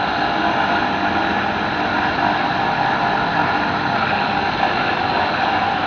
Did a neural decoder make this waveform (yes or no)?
no